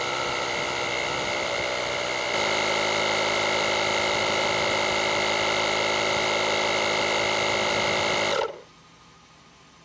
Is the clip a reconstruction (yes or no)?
no